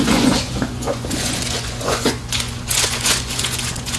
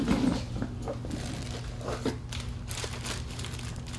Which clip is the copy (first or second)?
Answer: first